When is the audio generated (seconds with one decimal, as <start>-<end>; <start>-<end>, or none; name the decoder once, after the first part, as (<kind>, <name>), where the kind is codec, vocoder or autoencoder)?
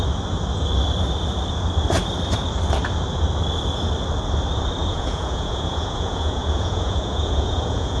4.8-8.0 (vocoder, Vocos)